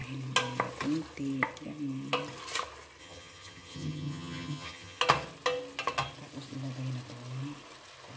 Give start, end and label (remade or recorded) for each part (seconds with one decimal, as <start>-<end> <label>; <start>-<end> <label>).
0.0-3.0 recorded; 3.0-5.0 remade; 5.0-8.2 recorded